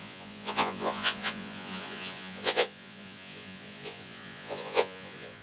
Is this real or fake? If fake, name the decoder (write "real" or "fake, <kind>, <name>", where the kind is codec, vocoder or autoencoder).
fake, vocoder, Vocos